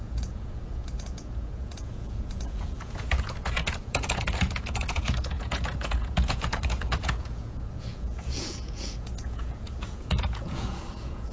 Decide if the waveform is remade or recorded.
remade